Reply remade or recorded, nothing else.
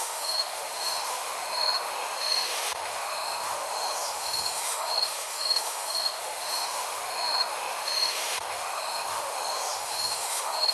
remade